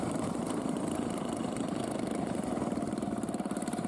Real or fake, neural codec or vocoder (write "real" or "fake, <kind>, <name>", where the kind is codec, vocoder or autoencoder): fake, vocoder, BigVGAN v2